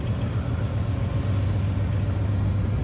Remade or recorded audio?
recorded